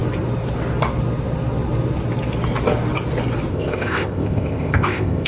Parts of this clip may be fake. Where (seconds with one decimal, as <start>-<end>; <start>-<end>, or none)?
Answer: 3.5-5.3

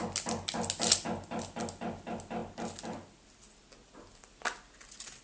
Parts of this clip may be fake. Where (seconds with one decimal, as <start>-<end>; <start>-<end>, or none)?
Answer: none

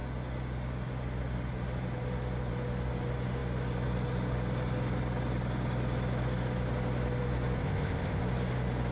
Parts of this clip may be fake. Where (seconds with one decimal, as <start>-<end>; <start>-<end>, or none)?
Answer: 7.6-8.2

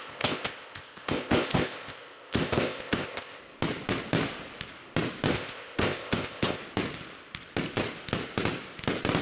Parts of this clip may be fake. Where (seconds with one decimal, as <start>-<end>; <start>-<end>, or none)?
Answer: 0.0-3.4; 5.3-6.6